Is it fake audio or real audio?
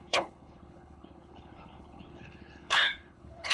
fake